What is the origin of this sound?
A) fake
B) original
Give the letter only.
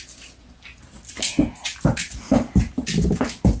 B